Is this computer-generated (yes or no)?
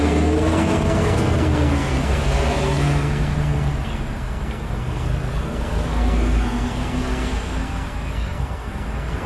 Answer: yes